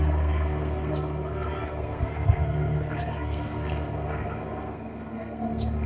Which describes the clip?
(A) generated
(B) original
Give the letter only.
A